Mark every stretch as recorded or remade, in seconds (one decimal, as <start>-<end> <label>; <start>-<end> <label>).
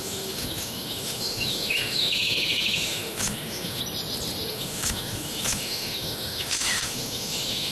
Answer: 0.0-3.8 remade; 3.8-4.5 recorded; 4.5-7.7 remade